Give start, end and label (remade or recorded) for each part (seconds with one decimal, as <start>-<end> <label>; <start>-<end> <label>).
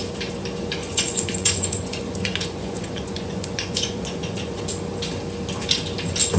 0.0-0.8 recorded; 0.8-4.6 remade; 4.6-6.4 recorded